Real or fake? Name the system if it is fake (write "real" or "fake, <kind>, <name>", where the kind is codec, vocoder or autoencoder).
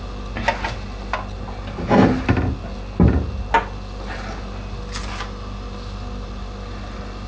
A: real